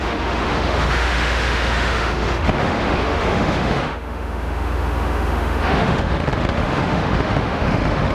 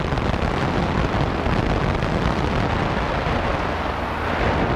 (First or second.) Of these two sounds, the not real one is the first